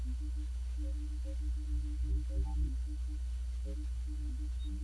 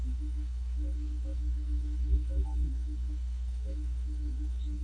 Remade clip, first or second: second